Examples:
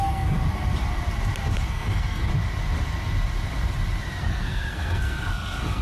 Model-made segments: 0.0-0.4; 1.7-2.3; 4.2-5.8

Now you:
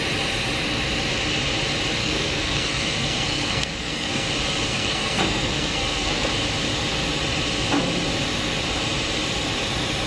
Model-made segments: 2.0-4.3; 4.7-6.3

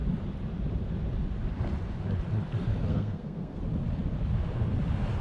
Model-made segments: 2.9-3.6